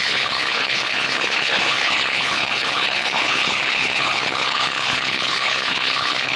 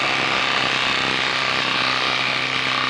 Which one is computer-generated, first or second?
first